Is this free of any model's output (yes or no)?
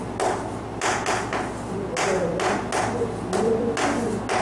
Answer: yes